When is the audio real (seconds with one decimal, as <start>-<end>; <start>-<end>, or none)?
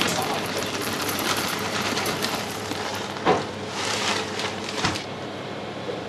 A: 2.9-3.9